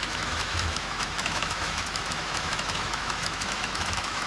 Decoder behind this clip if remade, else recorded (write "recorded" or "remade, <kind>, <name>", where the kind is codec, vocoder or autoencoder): remade, autoencoder, DAC-VAE